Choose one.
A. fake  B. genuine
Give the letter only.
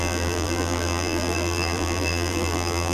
A